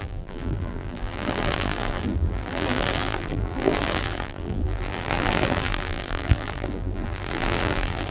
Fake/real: fake